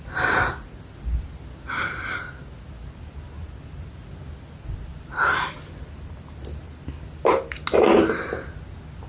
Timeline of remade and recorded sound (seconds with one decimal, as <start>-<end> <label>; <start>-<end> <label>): 0.0-4.9 recorded; 4.9-6.9 remade; 6.9-9.1 recorded